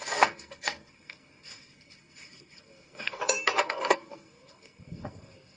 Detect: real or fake fake